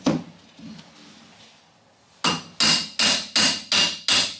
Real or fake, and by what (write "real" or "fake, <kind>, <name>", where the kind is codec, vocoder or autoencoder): real